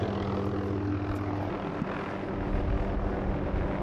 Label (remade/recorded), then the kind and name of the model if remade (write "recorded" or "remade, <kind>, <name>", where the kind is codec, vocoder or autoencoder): recorded